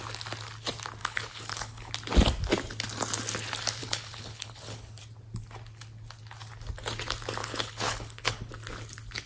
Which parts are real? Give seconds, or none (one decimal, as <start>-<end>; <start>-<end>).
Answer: 0.0-1.0; 1.9-3.8; 5.0-7.4; 8.5-9.3